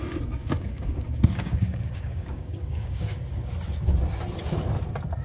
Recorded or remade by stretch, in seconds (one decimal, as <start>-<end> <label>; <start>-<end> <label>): 0.0-0.4 recorded; 0.4-3.5 remade; 3.5-5.2 recorded